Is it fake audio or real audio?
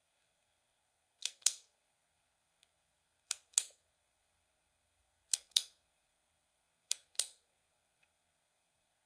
fake